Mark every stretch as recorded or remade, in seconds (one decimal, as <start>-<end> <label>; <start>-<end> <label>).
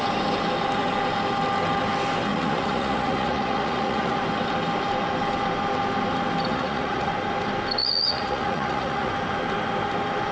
0.0-2.3 recorded; 2.3-4.2 remade; 4.2-6.5 recorded; 6.5-7.1 remade; 7.1-7.8 recorded; 7.8-9.1 remade; 9.1-10.3 recorded